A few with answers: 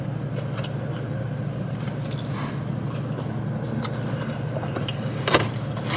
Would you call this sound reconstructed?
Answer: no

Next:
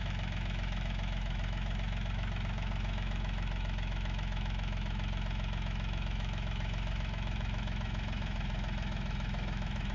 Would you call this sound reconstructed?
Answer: yes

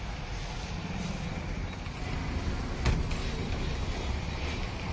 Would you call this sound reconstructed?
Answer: no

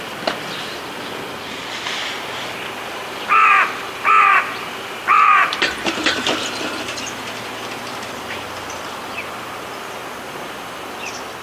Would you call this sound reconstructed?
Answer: yes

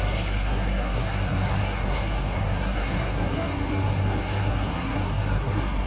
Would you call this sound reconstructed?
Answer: yes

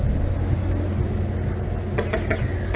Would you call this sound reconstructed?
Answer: no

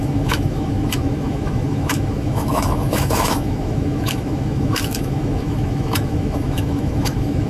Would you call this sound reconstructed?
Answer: yes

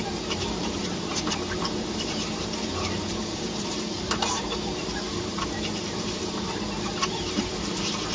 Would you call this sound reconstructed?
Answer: yes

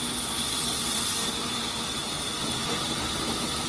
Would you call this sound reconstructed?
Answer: no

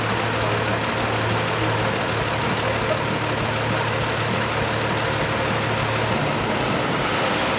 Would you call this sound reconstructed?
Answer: no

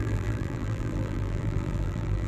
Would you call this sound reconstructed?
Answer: yes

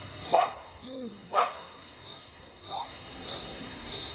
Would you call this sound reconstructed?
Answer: yes